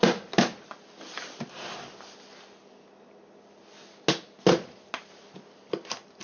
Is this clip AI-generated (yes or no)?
no